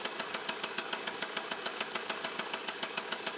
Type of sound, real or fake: fake